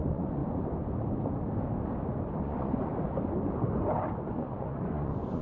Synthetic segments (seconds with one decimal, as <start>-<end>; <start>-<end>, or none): 0.0-0.4; 2.4-2.9; 4.1-5.4